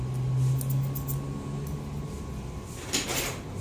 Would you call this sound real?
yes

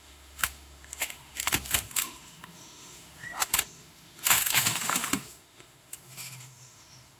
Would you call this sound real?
no